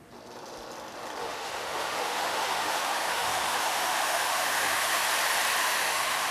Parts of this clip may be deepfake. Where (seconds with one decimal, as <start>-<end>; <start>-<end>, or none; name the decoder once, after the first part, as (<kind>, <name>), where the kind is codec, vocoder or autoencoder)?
1.2-5.0 (autoencoder, DAC-VAE); 5.6-6.3